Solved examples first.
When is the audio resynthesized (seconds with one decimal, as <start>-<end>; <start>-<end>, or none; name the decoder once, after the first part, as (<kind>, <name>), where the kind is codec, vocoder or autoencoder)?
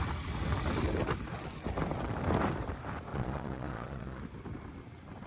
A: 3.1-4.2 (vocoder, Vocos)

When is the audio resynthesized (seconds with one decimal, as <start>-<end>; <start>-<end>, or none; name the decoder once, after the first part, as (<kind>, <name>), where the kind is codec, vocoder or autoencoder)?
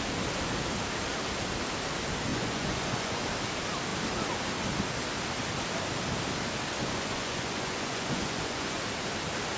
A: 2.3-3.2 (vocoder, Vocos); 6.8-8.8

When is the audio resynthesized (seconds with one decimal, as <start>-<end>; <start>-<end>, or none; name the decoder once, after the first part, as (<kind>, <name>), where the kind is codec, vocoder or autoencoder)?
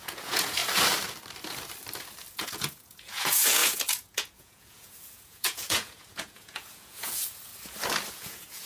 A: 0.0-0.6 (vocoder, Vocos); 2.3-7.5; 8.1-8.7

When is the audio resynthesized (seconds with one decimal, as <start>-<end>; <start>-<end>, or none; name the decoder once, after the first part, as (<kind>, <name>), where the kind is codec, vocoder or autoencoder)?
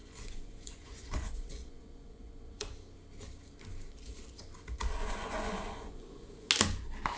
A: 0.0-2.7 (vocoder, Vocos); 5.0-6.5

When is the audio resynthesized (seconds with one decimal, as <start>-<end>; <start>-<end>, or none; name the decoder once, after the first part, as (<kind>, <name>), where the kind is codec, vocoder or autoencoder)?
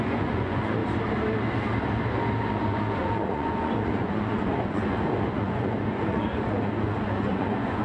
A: 0.0-0.8 (vocoder, Vocos); 2.4-7.8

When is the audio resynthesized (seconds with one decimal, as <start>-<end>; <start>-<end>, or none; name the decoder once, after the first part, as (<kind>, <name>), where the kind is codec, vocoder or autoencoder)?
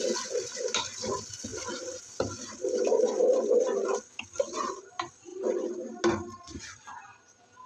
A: none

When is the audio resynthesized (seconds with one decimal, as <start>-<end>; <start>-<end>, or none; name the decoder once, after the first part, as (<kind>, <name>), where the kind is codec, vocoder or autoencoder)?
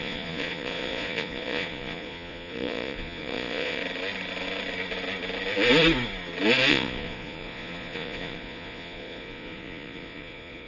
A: 0.0-3.8 (vocoder, Vocos); 6.7-10.7